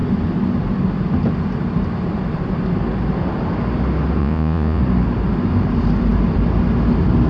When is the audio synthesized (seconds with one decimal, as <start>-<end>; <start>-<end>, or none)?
4.2-4.8